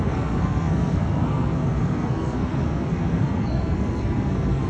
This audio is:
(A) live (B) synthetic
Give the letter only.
B